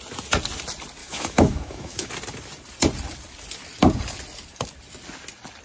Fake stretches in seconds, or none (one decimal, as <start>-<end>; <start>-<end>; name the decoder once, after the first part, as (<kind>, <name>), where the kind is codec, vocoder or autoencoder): 1.0-2.1 (autoencoder, DAC-VAE)

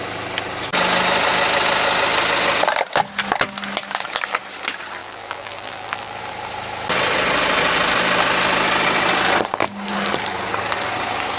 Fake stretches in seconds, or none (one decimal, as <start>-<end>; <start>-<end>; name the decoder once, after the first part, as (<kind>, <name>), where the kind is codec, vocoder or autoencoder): 5.0-6.2 (vocoder, BigVGAN v2)

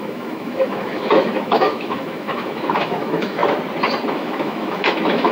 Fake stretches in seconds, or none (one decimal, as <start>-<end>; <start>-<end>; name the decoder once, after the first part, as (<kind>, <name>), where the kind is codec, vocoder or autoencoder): 0.0-3.4 (autoencoder, DAC-VAE); 4.1-5.3

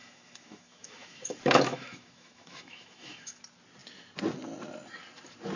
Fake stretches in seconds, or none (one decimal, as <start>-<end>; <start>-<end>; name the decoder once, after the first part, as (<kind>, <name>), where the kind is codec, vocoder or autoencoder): 0.0-3.4 (autoencoder, DAC-VAE)